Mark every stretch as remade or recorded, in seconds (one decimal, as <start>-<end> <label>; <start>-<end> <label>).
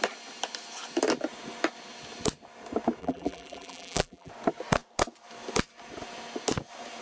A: 0.0-3.0 recorded; 3.0-4.3 remade; 4.3-7.0 recorded